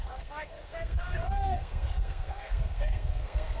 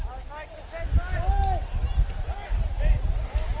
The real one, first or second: second